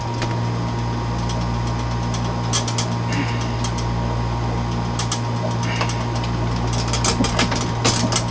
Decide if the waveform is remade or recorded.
recorded